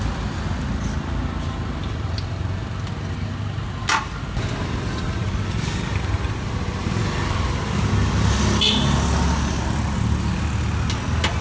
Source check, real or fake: real